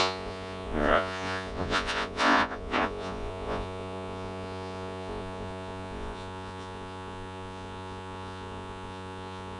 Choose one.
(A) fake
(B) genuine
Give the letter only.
A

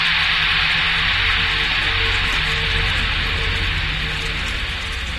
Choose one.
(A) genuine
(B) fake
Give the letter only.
A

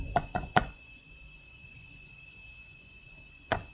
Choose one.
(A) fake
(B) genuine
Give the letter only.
A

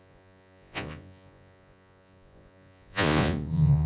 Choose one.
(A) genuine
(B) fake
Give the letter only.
B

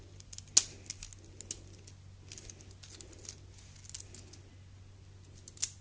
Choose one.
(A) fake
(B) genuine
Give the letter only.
B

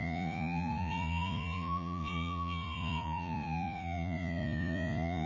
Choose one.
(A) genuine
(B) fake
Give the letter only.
B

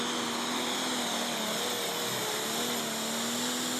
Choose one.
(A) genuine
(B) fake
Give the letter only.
A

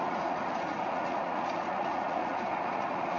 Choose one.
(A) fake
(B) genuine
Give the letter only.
A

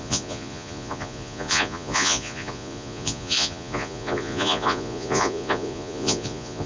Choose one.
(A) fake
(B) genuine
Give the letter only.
A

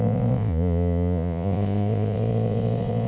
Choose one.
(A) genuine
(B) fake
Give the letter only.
B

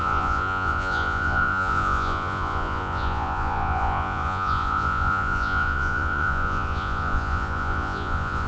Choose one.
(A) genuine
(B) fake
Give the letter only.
B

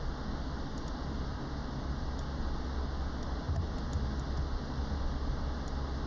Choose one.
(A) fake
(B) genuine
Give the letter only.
B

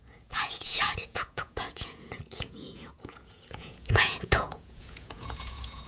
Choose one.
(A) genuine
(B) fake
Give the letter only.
B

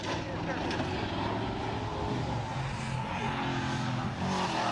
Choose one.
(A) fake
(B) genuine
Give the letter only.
B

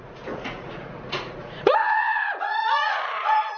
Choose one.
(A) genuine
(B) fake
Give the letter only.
B